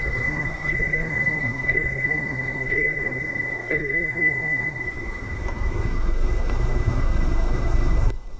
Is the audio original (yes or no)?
no